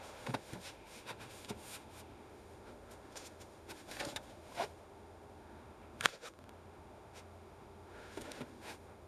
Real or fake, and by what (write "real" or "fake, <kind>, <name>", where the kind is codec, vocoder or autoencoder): fake, autoencoder, DAC-VAE